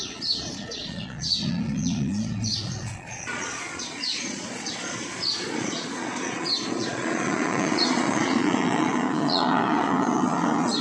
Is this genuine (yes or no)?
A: no